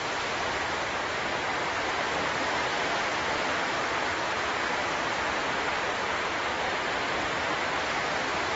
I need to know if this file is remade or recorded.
recorded